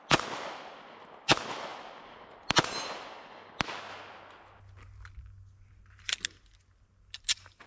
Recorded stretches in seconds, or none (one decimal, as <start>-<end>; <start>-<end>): 0.0-7.7